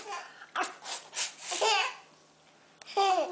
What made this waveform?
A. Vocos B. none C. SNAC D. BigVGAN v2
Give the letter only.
B